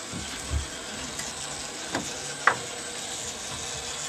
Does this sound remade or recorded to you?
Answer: recorded